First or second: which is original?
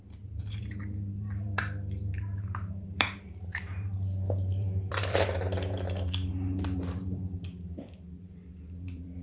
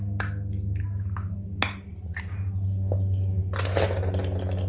second